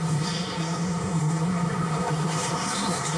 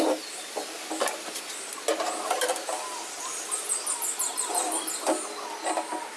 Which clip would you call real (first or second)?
second